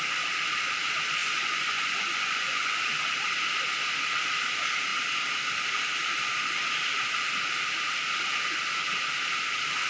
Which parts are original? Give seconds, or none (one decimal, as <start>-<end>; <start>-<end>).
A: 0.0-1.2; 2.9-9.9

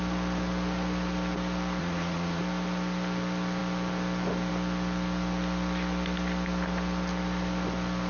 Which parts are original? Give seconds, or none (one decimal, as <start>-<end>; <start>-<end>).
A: 0.0-1.8; 2.4-8.1

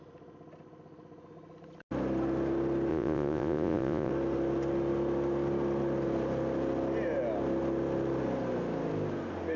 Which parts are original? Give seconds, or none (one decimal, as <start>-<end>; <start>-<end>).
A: 0.0-2.9; 4.1-9.6

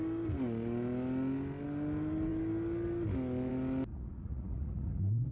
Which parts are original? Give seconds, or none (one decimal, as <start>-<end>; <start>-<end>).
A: 0.0-3.9

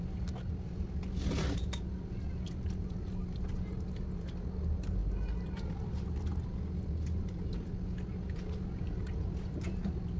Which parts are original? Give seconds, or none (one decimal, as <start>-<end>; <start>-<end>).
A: 0.0-10.2

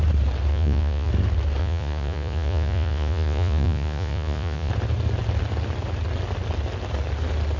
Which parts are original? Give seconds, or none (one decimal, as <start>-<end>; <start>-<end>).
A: 0.0-0.5; 1.1-1.6; 4.7-7.6

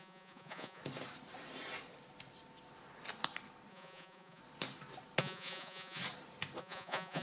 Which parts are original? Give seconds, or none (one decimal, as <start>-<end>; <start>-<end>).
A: 0.8-3.7; 4.4-5.2; 6.0-6.6